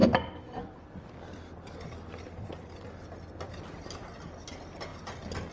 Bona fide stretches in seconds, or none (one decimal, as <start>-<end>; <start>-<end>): 0.0-5.5